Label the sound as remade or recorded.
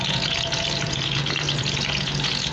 remade